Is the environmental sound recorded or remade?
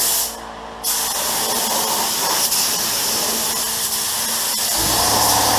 recorded